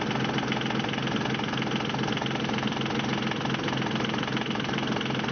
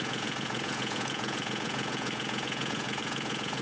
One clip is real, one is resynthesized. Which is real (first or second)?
first